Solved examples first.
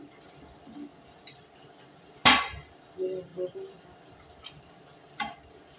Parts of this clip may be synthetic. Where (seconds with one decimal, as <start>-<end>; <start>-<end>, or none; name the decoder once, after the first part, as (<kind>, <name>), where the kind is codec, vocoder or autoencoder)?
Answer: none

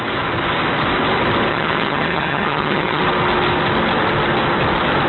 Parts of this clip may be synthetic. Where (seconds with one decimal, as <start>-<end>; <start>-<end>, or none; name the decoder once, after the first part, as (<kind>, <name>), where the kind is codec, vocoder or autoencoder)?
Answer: 1.5-3.0 (vocoder, HiFi-GAN)

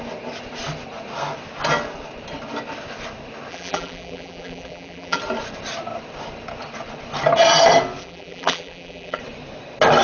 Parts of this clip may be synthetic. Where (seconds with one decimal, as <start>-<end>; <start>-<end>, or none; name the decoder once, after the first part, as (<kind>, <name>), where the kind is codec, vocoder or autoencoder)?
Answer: 3.5-5.2 (vocoder, BigVGAN v2); 8.0-9.2

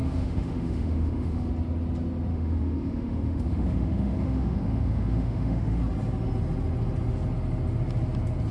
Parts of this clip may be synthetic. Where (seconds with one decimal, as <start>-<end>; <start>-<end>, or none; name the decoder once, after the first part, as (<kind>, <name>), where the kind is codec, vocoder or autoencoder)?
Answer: 0.0-1.5 (autoencoder, DAC-VAE); 2.3-5.8